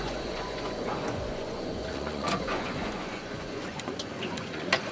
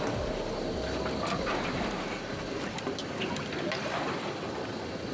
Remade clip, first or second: first